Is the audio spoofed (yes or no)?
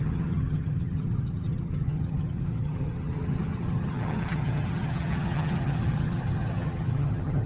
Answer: yes